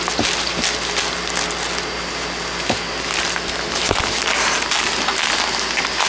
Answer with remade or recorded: recorded